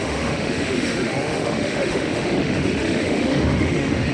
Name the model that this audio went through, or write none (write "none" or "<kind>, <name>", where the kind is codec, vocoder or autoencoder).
autoencoder, DAC-VAE